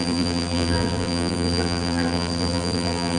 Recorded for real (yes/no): no